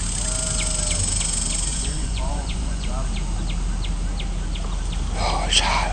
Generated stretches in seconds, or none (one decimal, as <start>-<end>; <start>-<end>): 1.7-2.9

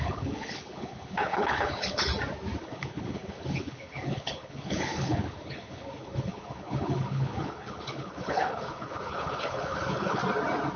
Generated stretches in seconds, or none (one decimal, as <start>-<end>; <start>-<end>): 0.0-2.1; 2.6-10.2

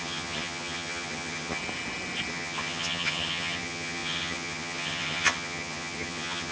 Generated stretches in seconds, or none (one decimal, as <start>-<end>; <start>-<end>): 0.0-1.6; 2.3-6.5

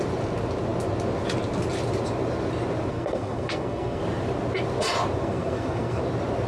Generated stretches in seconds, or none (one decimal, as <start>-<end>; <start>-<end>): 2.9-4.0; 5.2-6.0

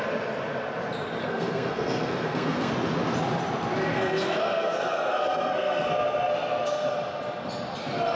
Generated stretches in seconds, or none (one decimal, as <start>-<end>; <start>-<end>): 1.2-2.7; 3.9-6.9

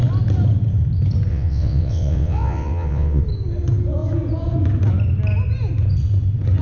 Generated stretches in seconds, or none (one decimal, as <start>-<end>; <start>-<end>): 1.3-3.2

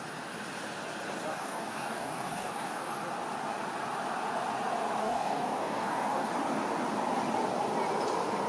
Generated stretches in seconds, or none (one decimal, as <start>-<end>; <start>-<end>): 1.4-2.9; 5.0-6.3

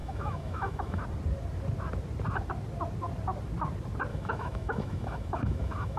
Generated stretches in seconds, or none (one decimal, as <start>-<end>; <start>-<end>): 0.0-1.0; 4.1-6.0